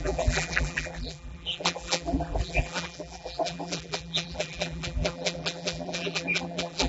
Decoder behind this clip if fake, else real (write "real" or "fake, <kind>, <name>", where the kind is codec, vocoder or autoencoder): fake, vocoder, BigVGAN v2